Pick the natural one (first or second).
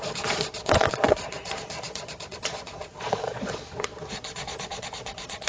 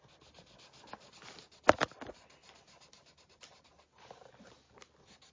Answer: second